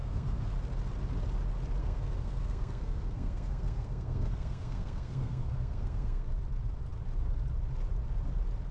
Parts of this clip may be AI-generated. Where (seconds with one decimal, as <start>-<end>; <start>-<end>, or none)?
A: 0.0-0.5; 1.8-6.3